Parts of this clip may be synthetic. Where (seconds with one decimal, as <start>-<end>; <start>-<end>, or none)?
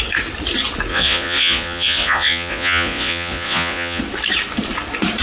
0.9-4.0